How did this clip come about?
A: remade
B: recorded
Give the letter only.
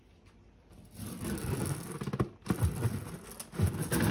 B